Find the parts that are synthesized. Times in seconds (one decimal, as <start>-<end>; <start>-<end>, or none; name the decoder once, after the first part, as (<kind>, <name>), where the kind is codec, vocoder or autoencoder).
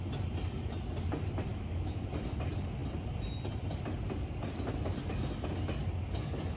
1.5-2.1 (autoencoder, DAC-VAE)